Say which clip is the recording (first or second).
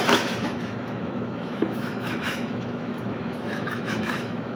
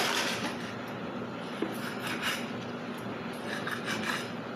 second